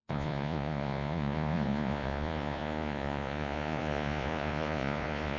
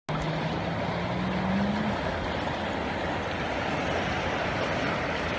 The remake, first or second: first